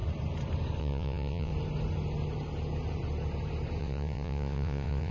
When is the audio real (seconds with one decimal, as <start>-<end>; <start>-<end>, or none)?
0.0-0.8; 1.5-3.8